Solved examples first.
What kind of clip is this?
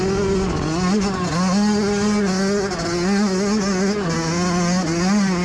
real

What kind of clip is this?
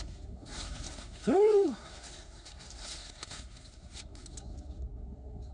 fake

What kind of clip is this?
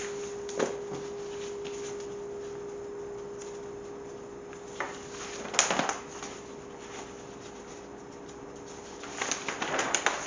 real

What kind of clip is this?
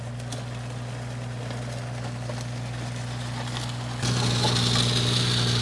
real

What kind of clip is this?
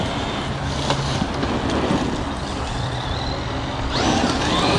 real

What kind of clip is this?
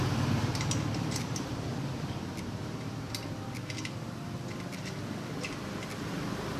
fake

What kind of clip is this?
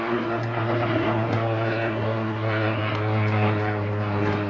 fake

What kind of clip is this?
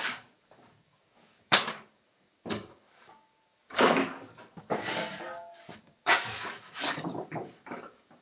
fake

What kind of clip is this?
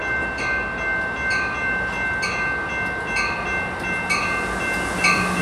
real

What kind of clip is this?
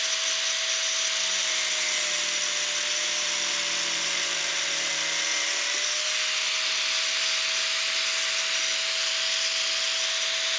real